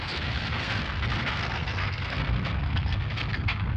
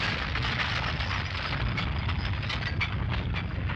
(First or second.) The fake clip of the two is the first